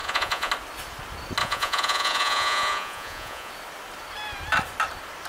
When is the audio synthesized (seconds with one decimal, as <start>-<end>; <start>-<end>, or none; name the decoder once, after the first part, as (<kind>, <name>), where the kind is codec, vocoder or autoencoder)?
0.0-0.5 (vocoder, Vocos); 1.4-3.5